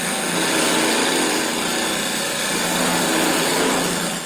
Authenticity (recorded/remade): recorded